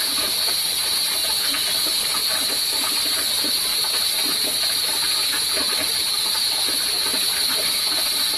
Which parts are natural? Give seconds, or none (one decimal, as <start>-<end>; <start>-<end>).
0.0-3.7; 4.2-7.1; 7.7-8.4